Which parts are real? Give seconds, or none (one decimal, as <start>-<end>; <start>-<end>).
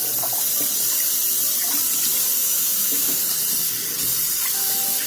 0.0-2.4; 3.2-5.1